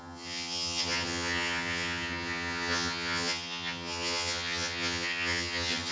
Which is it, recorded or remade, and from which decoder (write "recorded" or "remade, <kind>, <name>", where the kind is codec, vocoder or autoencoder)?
remade, vocoder, HiFi-GAN